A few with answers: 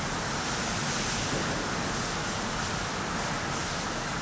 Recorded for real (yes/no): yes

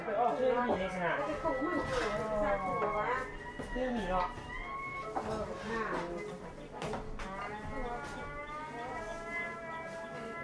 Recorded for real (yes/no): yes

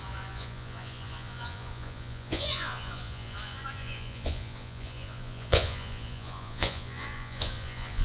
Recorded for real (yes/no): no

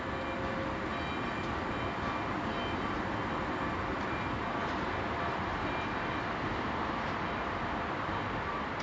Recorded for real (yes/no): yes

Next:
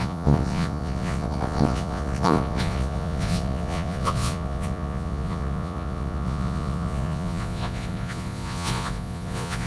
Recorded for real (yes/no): no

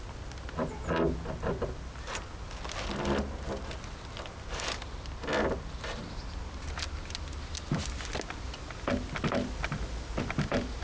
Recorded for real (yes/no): yes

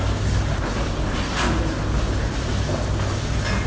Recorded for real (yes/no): yes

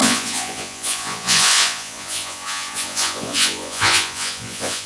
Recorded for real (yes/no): no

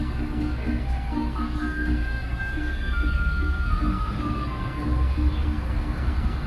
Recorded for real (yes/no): no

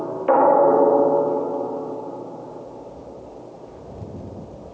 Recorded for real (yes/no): yes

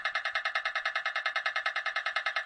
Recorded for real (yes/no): no